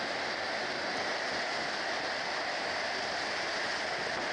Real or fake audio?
real